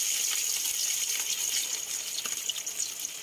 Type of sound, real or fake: real